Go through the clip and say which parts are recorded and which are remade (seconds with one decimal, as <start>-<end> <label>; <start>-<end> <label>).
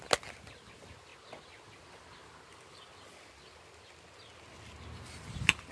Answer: 0.0-5.7 recorded